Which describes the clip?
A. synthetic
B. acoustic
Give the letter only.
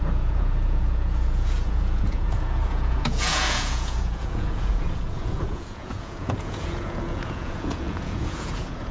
A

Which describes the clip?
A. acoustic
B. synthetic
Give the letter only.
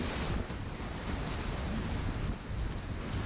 A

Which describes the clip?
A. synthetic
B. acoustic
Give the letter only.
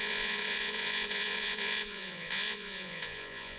A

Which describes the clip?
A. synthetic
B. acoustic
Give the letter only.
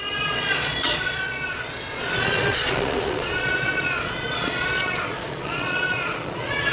A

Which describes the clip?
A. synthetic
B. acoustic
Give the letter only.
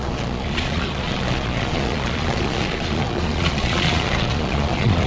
A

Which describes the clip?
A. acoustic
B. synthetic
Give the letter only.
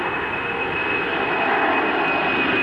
A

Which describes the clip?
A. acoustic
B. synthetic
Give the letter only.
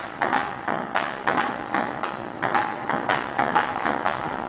B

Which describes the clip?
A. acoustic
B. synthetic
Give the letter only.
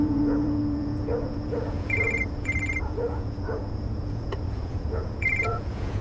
B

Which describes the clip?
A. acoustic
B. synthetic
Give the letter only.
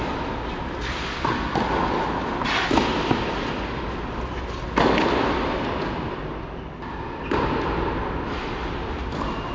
A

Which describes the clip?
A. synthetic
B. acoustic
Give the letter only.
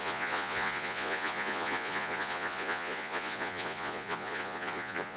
A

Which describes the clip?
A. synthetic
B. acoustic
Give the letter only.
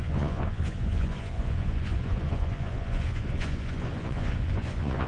A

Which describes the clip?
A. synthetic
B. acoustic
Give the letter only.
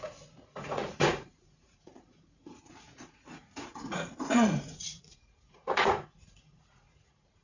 A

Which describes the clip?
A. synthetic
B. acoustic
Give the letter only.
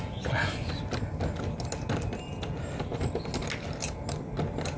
B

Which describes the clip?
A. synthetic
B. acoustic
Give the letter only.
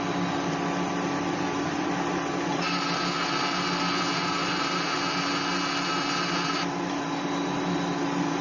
B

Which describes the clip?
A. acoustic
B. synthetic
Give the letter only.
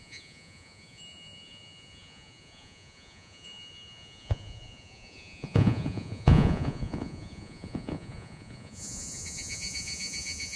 B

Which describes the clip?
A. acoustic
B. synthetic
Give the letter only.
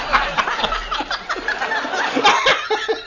A